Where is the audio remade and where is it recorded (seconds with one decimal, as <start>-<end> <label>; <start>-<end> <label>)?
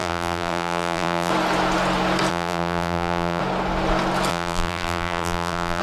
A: 0.0-1.3 remade; 1.3-2.3 recorded; 2.3-3.4 remade; 3.4-4.3 recorded; 4.3-5.8 remade